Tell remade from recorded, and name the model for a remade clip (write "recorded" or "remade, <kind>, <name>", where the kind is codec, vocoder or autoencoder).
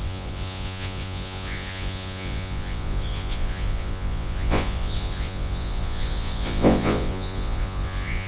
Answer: remade, vocoder, Vocos